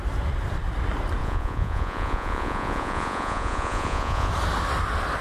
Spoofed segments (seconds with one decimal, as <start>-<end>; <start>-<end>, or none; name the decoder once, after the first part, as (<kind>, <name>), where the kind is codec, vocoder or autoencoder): 1.2-4.3 (vocoder, Vocos)